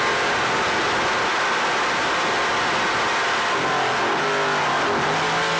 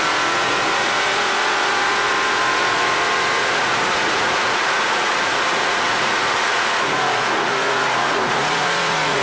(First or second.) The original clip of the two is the first